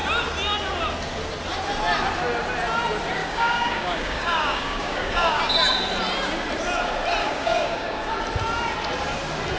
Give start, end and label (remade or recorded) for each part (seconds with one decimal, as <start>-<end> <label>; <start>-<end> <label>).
0.0-3.2 recorded; 3.2-5.4 remade; 5.4-7.2 recorded; 7.2-8.1 remade; 8.1-9.6 recorded